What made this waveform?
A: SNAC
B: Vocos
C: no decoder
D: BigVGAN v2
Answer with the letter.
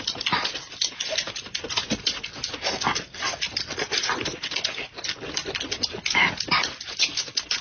C